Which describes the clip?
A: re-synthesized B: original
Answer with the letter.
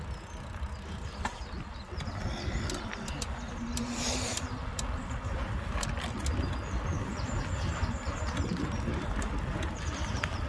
B